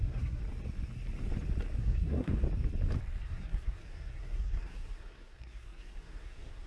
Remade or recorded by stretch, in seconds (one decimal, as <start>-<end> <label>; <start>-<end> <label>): 0.0-0.4 remade; 0.4-1.8 recorded; 1.8-2.3 remade; 2.3-3.2 recorded; 3.2-6.7 remade